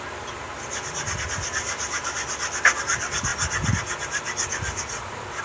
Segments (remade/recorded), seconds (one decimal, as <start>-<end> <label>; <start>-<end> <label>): 0.0-5.4 recorded